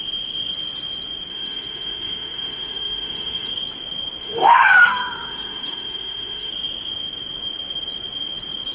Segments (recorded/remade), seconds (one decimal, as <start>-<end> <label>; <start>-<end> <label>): 0.0-1.3 recorded; 1.3-3.5 remade; 3.5-4.2 recorded; 4.2-6.5 remade; 6.5-8.7 recorded